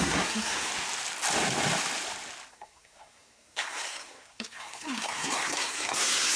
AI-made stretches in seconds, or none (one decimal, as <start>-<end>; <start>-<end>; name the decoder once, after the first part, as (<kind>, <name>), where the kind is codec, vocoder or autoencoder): 0.0-0.7 (codec, SNAC); 2.5-6.4